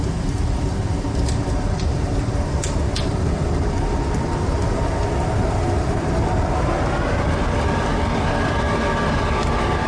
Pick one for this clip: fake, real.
real